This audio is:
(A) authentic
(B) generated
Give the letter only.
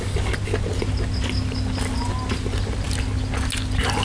A